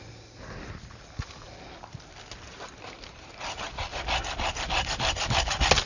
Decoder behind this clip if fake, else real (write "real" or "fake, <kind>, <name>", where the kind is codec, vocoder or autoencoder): real